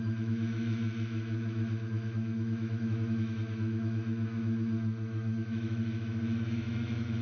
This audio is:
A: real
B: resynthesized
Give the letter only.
B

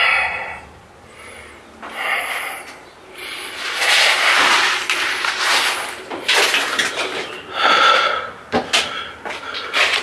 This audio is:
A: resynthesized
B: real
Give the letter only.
B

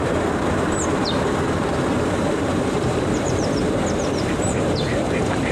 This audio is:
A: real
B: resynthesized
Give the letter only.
B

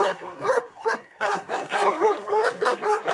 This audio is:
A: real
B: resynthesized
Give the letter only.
B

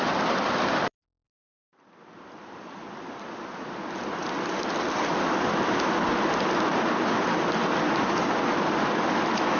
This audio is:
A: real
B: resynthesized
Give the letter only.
A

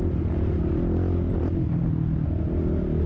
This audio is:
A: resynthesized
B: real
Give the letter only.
B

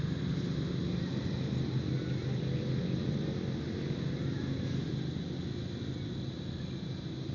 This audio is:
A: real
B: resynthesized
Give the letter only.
A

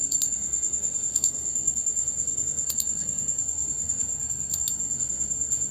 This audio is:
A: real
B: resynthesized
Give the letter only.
B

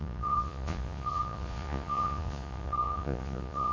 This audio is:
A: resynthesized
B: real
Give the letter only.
A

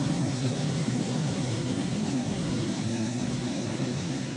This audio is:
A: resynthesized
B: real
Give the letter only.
A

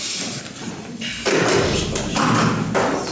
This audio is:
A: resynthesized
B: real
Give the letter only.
B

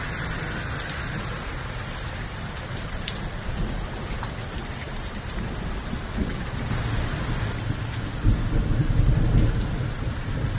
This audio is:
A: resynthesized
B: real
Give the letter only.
B